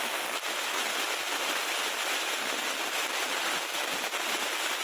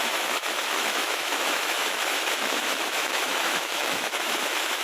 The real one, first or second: first